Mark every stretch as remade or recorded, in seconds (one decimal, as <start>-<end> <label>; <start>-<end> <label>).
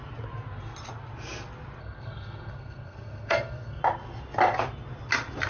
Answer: 0.0-1.8 recorded; 1.8-3.8 remade; 3.8-5.5 recorded